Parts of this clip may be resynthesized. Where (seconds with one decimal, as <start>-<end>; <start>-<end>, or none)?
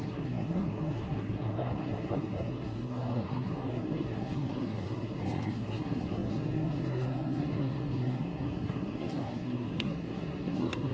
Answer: 0.0-10.9